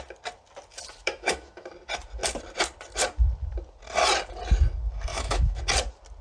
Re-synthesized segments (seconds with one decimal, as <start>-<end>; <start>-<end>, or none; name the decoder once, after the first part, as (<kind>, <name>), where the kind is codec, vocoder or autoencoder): 1.0-1.7 (autoencoder, DAC-VAE); 5.1-5.6